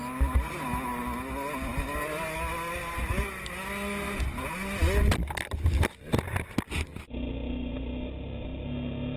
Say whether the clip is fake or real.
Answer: real